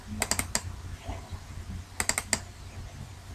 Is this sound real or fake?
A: real